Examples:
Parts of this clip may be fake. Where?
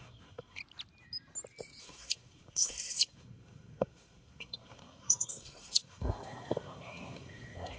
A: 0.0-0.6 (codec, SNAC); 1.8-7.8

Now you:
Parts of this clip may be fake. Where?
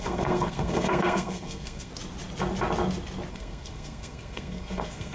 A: 0.0-1.9 (codec, SNAC); 3.3-5.1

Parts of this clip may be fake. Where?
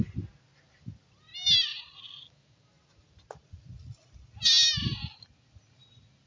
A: none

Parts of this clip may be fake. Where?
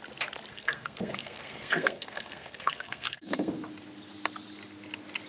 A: 0.5-3.5 (codec, SNAC)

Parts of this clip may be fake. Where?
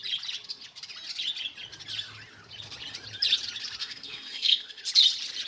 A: 3.8-4.8 (codec, SNAC)